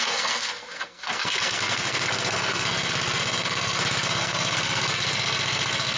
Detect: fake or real fake